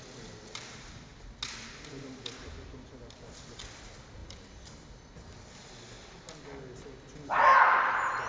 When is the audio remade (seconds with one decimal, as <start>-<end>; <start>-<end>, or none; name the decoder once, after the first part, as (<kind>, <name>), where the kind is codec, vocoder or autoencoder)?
none

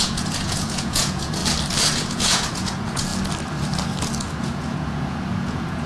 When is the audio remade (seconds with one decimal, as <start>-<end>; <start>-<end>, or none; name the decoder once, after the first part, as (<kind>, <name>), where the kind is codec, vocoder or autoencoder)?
0.0-1.4 (vocoder, Vocos); 1.9-3.1; 4.4-5.9

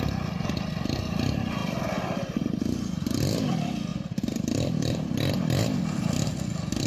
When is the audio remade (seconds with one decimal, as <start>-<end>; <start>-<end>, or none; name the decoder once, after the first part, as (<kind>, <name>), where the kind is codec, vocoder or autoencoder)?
none

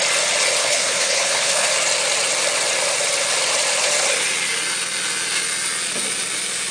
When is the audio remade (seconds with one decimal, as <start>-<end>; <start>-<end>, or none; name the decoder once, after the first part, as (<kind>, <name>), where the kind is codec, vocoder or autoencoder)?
0.6-1.7 (codec, HILCodec)